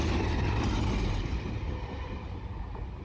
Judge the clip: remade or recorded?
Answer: recorded